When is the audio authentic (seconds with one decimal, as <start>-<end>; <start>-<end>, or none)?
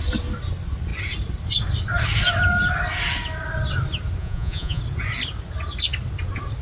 0.0-4.2; 4.8-6.6